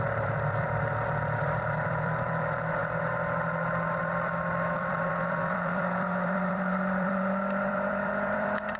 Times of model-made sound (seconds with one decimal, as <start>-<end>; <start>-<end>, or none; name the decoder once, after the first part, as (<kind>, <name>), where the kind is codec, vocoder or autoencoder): 0.0-2.8 (vocoder, BigVGAN v2); 4.0-8.8